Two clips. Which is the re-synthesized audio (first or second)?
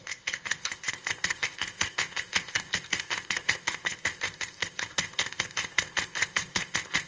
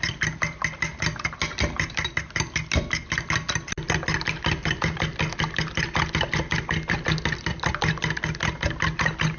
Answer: first